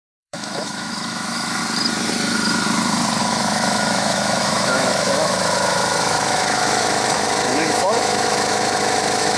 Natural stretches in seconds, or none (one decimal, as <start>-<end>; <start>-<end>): 1.6-3.2